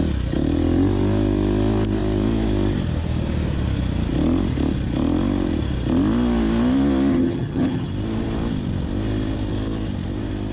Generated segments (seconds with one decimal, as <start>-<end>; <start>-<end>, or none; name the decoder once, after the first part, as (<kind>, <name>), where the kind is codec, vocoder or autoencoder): 7.1-7.9 (vocoder, HiFi-GAN)